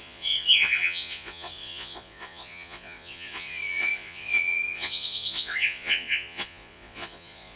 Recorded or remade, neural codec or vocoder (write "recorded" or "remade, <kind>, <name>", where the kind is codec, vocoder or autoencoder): remade, vocoder, Vocos